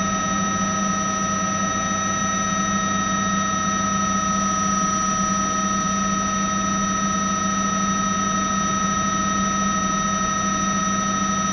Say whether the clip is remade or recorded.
recorded